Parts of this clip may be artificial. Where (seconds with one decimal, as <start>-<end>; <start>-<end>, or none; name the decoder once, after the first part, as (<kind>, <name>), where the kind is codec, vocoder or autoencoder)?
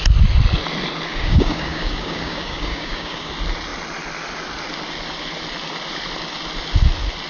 1.1-3.3 (codec, DAC)